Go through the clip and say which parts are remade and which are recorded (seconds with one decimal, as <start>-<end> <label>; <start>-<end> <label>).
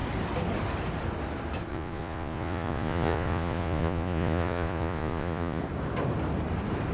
0.0-1.7 recorded; 1.7-5.6 remade; 5.6-6.9 recorded